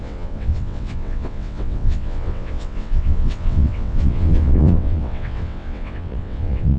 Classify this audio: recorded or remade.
remade